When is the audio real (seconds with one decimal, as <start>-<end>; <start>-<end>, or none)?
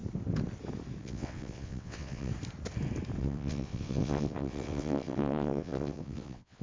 0.0-1.0; 2.3-3.2